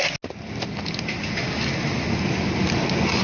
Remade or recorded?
recorded